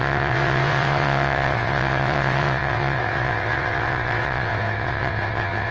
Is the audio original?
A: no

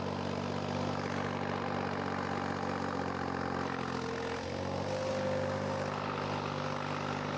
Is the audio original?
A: yes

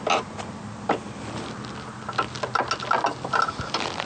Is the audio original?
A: yes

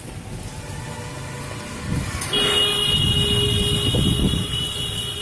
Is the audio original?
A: yes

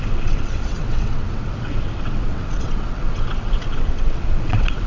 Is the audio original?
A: no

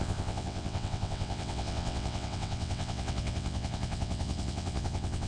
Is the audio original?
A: no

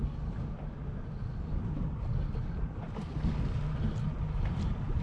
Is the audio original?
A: yes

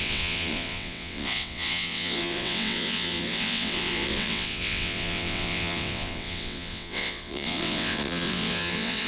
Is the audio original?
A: no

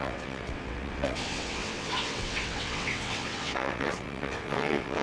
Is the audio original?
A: no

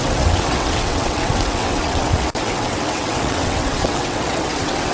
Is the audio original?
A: no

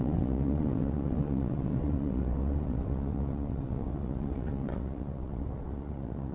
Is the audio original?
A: no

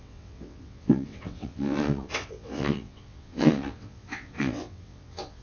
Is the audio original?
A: no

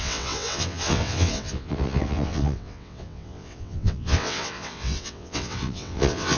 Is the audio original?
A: no